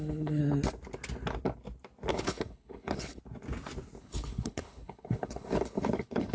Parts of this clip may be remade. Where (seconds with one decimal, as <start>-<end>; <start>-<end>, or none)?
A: 0.0-0.4; 2.1-3.2; 4.0-6.3